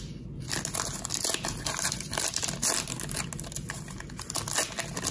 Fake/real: real